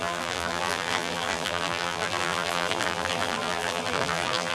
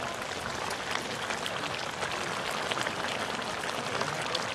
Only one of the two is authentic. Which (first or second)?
second